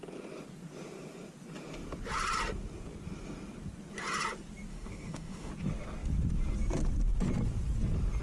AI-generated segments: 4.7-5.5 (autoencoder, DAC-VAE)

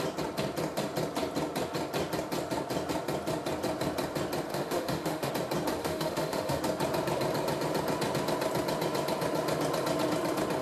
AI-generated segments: 4.5-5.3 (autoencoder, DAC-VAE); 5.8-6.6

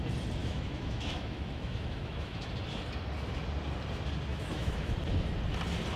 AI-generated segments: 0.4-2.4 (autoencoder, DAC-VAE); 4.3-4.9

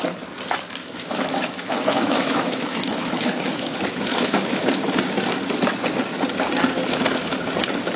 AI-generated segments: 0.8-4.9 (autoencoder, DAC-VAE)

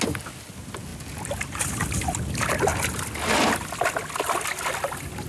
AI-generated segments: none